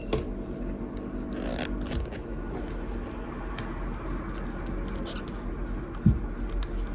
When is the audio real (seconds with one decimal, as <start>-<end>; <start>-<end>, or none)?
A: 0.0-6.9